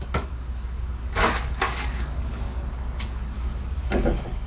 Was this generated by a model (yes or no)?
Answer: yes